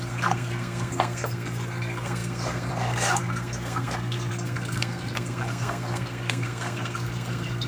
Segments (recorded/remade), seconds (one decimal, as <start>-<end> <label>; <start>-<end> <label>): 0.0-7.7 remade